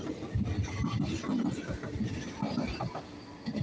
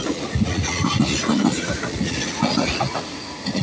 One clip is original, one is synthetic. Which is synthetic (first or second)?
second